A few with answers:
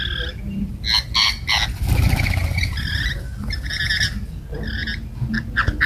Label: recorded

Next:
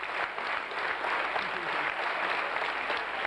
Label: recorded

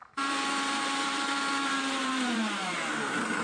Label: remade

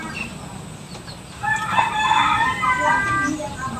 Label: remade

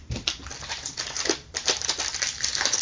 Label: remade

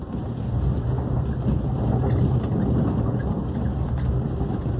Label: recorded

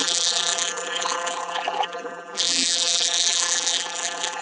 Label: remade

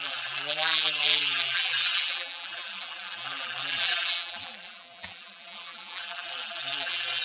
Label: remade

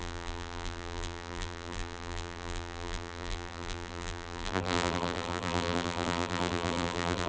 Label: remade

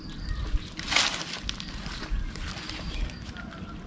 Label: recorded